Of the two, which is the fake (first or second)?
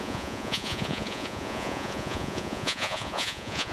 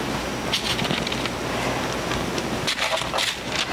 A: first